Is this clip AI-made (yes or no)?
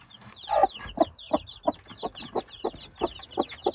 no